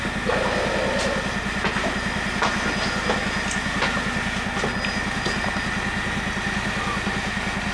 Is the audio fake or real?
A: real